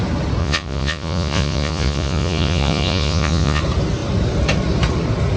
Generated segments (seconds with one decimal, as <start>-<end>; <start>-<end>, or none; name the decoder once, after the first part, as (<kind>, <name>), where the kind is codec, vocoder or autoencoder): 0.4-3.6 (vocoder, Vocos)